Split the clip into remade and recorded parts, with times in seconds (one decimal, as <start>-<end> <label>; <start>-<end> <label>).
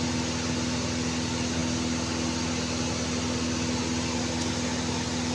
0.0-5.3 recorded